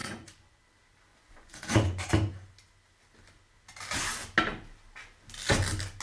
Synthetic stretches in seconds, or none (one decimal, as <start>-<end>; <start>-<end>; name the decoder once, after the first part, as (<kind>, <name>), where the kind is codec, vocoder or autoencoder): 0.0-0.6 (vocoder, Vocos); 1.1-2.1